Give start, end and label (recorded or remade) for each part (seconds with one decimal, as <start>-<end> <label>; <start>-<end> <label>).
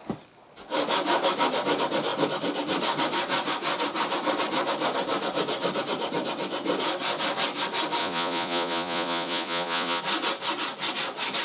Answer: 0.0-8.0 recorded; 8.0-10.0 remade; 10.0-11.4 recorded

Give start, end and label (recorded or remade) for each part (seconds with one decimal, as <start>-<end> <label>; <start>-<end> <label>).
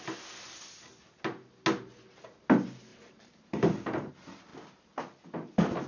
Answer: 0.0-2.9 recorded; 2.9-4.1 remade; 4.1-5.9 recorded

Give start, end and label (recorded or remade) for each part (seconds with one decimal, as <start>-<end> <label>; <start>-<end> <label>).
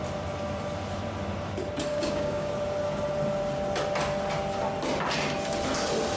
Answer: 0.0-1.9 recorded; 1.9-2.5 remade; 2.5-6.2 recorded